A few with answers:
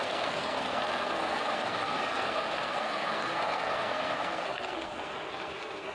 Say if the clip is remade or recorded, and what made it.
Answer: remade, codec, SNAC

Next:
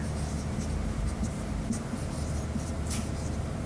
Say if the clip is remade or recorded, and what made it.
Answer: remade, vocoder, BigVGAN v2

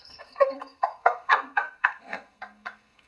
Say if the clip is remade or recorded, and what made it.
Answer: remade, codec, SNAC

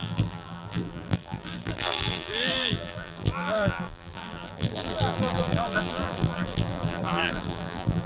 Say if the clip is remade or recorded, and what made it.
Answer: remade, vocoder, BigVGAN v2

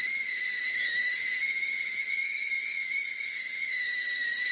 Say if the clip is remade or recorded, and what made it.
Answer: remade, vocoder, HiFi-GAN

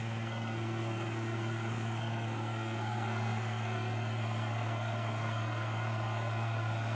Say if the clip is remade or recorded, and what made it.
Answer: remade, codec, SNAC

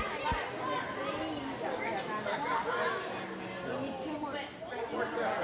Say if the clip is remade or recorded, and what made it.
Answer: recorded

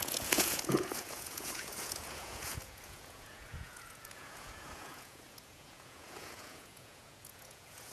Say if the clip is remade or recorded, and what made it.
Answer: remade, vocoder, Vocos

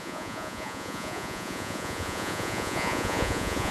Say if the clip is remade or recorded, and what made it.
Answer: remade, vocoder, Vocos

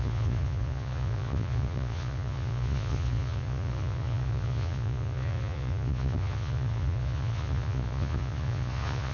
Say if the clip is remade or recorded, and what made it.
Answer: remade, vocoder, Vocos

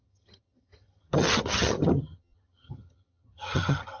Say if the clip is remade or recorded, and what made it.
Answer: remade, vocoder, HiFi-GAN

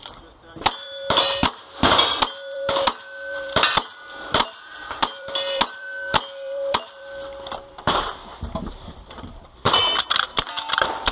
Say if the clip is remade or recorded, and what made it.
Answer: remade, vocoder, BigVGAN v2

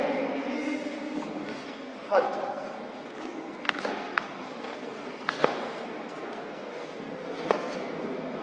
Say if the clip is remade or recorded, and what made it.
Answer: remade, codec, SNAC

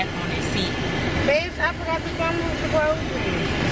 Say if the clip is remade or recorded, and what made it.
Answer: recorded